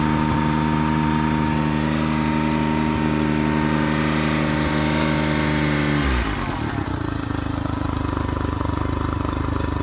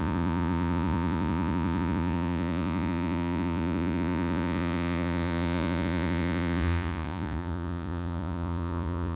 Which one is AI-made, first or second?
second